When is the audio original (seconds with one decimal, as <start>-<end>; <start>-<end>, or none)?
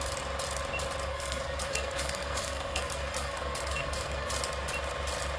0.0-1.1; 4.3-5.4